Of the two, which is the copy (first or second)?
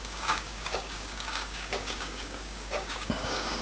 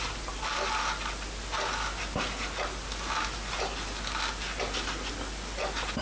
first